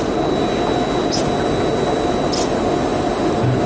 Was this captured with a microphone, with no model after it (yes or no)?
yes